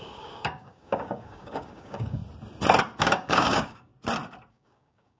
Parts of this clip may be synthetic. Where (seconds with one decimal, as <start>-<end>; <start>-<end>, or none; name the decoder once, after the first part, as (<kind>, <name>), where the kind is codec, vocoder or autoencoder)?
0.0-2.2 (codec, DAC); 3.0-3.9; 4.5-5.2

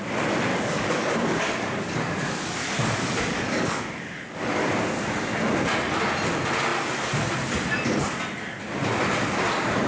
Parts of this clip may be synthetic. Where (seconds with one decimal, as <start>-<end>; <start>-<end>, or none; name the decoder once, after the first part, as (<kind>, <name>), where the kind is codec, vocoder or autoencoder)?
0.5-2.7 (codec, DAC); 3.3-4.7

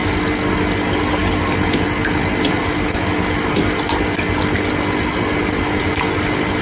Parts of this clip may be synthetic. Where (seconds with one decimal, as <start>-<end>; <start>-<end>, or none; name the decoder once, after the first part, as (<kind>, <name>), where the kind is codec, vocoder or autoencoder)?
none

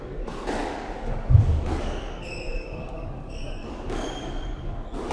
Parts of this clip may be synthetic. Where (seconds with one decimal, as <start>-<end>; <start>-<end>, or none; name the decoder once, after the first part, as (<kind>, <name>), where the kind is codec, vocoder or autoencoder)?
0.0-5.1 (codec, DAC)

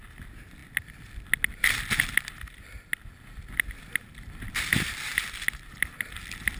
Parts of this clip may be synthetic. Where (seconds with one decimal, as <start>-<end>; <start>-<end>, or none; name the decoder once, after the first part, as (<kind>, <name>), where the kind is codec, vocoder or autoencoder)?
none

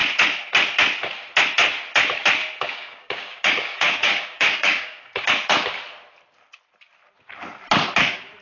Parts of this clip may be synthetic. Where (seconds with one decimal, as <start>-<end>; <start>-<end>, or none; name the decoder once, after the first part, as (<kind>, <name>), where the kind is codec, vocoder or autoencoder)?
2.4-5.3 (codec, DAC)

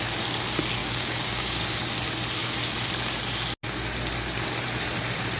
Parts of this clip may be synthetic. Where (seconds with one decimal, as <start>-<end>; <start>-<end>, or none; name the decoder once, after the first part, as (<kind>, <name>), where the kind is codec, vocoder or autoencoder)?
0.8-1.6 (codec, DAC)